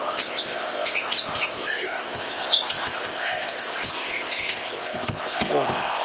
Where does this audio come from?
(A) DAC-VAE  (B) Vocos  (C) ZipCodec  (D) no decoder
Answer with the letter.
C